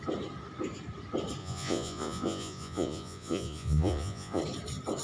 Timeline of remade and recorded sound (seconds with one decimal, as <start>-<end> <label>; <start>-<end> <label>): 0.0-1.4 recorded; 1.4-4.4 remade; 4.4-5.0 recorded